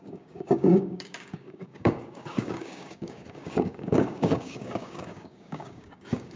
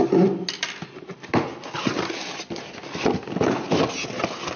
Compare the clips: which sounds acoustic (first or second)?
second